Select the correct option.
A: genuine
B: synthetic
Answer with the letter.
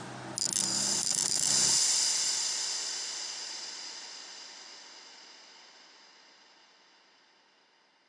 A